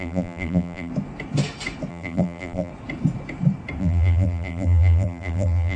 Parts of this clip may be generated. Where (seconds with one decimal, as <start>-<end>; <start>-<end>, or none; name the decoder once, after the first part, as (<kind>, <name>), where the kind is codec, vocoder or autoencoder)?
0.0-0.9 (vocoder, BigVGAN v2); 1.9-2.7; 3.8-5.8